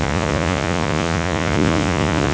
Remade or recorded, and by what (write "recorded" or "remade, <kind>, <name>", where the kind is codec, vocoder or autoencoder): remade, vocoder, Vocos